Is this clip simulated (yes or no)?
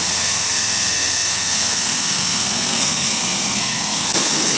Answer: yes